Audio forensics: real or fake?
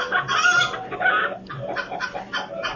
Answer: real